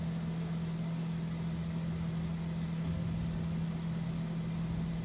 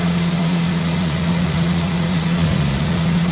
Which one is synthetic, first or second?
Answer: second